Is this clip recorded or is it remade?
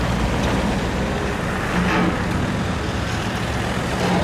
recorded